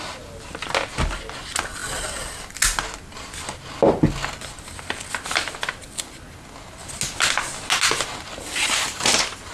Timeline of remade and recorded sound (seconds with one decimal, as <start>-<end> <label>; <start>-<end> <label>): 0.0-8.6 recorded; 8.6-9.5 remade